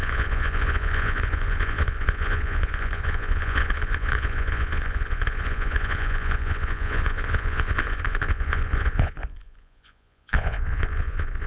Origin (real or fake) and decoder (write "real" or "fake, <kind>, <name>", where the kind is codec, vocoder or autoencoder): fake, vocoder, Vocos